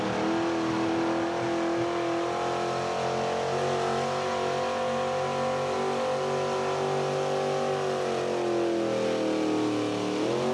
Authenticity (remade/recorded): recorded